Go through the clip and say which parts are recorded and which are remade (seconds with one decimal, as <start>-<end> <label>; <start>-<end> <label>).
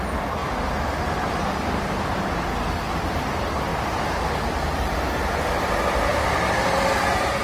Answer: 0.0-7.4 recorded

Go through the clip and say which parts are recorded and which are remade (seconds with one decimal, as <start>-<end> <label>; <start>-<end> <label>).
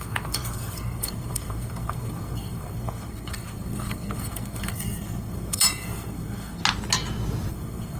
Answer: 0.0-6.6 remade; 6.6-7.5 recorded; 7.5-8.0 remade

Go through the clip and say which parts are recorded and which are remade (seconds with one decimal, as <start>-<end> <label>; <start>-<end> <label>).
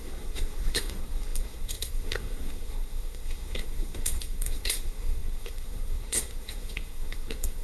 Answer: 0.0-7.6 remade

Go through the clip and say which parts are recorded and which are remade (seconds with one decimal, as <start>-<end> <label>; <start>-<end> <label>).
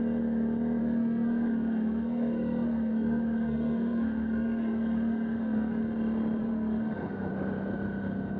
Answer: 0.0-0.8 recorded; 0.8-5.8 remade; 5.8-6.4 recorded; 6.4-7.3 remade; 7.3-8.4 recorded